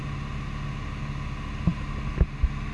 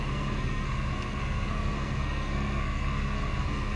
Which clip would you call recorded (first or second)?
first